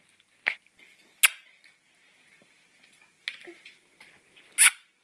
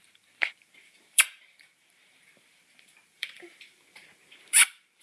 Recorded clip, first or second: first